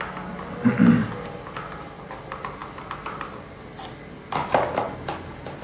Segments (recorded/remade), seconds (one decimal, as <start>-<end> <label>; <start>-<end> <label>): 0.0-5.6 recorded